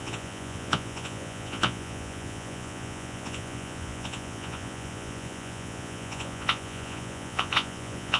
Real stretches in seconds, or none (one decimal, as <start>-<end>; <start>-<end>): none